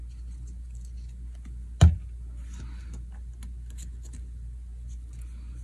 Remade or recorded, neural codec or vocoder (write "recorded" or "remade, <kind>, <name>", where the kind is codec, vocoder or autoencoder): recorded